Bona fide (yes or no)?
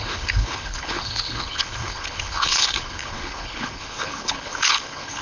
no